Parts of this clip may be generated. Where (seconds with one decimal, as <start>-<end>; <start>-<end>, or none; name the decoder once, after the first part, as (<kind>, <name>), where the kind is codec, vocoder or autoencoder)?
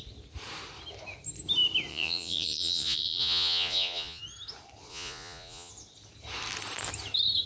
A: 1.9-4.2 (vocoder, Vocos); 4.9-5.7